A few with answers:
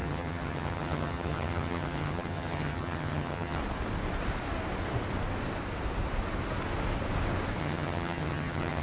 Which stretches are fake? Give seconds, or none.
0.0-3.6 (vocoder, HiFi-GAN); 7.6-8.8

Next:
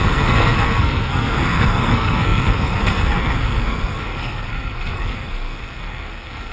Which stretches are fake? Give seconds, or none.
0.0-6.5 (codec, SNAC)